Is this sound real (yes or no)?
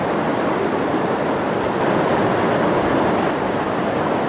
yes